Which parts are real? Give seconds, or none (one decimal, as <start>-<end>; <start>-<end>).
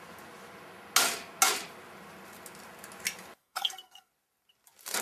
0.0-3.4; 4.1-5.0